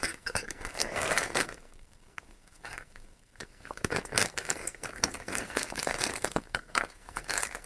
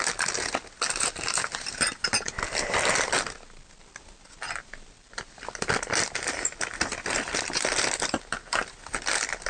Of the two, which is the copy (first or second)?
first